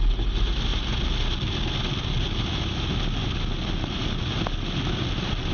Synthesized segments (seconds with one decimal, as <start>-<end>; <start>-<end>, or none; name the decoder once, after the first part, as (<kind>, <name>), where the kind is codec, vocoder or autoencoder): none